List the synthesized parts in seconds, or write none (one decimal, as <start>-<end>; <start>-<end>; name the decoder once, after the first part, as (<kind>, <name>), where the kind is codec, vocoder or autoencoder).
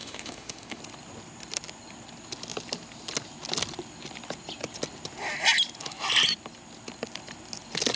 0.0-0.8 (autoencoder, DAC-VAE)